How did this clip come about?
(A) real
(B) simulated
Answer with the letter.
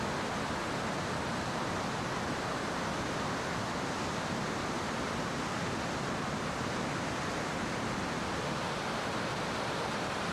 A